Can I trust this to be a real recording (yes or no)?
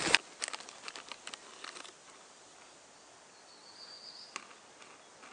yes